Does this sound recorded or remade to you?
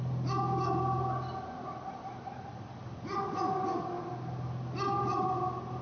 recorded